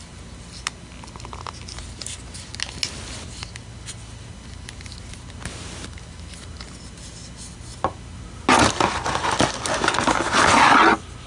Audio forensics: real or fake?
real